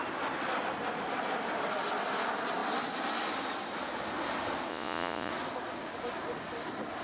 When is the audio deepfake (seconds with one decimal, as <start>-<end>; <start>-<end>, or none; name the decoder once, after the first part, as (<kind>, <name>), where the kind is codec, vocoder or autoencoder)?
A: 4.7-5.3 (vocoder, Vocos)